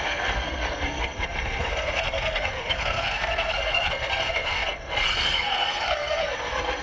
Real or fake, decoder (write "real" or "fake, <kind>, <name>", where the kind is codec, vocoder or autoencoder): fake, codec, SNAC